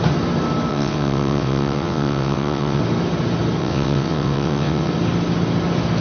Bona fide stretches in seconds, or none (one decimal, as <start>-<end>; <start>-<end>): 0.0-0.7; 2.8-3.6; 4.9-6.0